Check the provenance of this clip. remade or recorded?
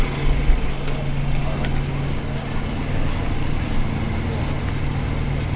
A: recorded